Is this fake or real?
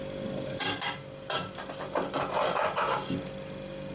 real